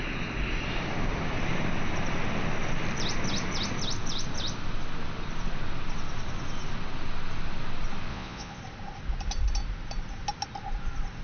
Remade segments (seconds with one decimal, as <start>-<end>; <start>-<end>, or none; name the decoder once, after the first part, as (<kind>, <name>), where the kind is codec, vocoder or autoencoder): 8.1-8.6 (vocoder, Vocos)